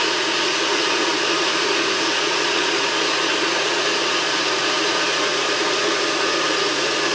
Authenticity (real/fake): fake